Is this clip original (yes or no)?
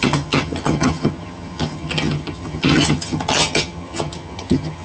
no